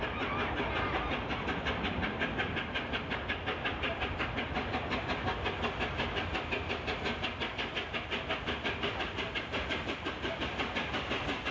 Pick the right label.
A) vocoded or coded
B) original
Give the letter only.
B